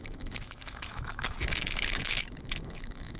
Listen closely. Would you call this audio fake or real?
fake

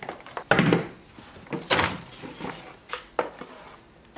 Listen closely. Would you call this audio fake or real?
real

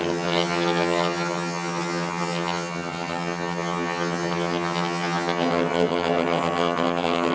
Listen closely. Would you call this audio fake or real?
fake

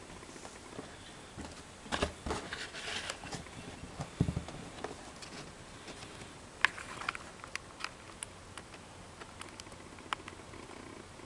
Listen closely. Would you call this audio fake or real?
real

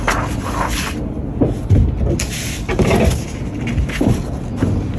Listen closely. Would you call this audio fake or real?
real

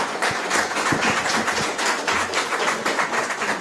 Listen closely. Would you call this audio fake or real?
fake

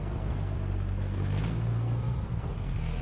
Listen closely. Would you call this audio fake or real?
fake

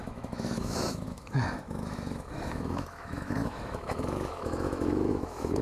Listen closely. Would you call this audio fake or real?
fake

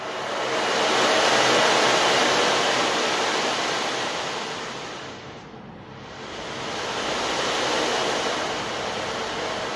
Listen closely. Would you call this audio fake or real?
real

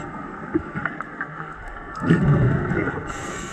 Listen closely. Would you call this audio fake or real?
fake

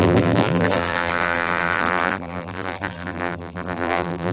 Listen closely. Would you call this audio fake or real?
fake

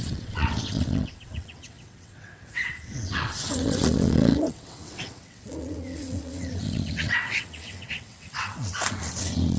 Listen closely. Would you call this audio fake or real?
fake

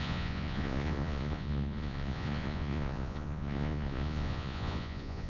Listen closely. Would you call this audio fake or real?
fake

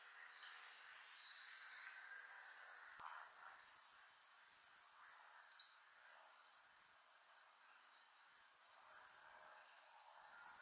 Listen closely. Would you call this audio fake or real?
real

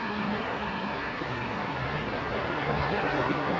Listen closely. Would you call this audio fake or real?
fake